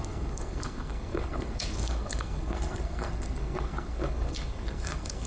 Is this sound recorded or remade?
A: remade